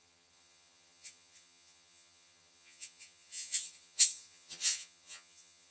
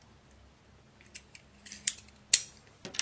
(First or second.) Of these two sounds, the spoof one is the first